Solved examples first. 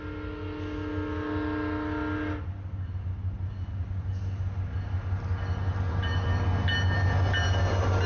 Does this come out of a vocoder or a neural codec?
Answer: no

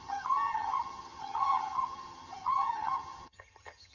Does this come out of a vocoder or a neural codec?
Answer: yes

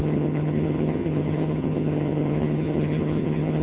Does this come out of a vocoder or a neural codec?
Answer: yes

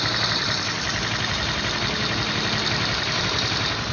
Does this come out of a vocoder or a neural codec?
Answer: no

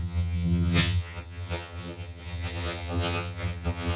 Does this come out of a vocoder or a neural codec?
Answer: yes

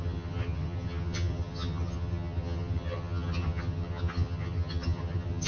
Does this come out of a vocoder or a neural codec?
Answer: yes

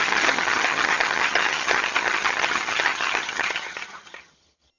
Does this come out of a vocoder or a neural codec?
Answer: yes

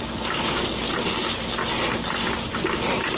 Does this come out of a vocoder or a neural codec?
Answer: no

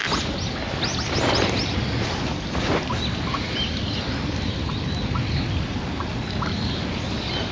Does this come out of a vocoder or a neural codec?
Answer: no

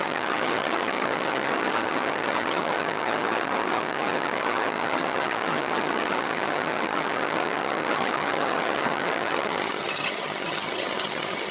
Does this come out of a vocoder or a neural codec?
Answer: yes